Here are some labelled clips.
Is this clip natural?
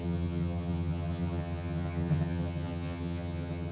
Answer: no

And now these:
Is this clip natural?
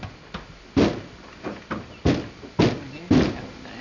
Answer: yes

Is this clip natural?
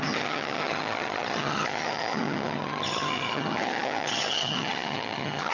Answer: no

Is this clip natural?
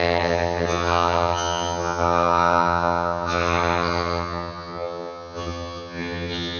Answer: no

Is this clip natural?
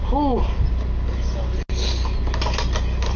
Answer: yes